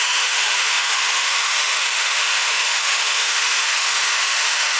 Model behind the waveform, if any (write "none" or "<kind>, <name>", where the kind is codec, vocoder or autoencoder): autoencoder, DAC-VAE